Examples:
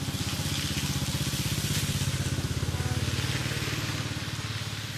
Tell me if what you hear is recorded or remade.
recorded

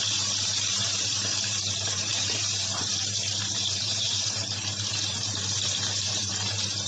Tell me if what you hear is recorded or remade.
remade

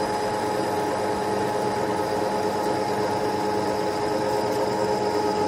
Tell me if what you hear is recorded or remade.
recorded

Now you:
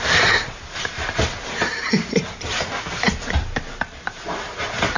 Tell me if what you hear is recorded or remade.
remade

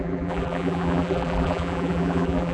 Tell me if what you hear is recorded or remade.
remade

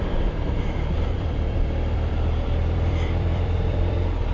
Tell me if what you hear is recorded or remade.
remade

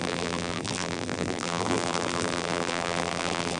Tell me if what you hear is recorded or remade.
remade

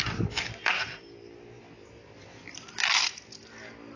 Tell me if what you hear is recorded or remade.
recorded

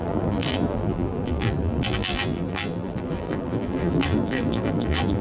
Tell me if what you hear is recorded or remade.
remade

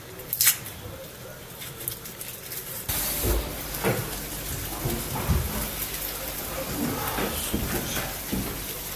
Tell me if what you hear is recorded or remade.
recorded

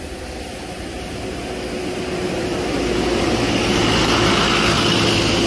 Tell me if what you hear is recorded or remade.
recorded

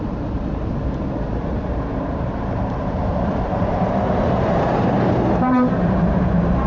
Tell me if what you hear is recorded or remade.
remade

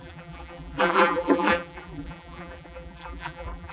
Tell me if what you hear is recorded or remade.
remade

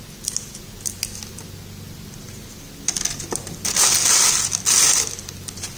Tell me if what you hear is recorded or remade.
recorded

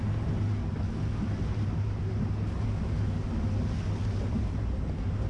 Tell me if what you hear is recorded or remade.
recorded